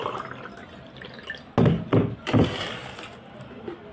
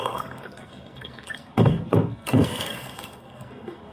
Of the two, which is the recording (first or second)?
first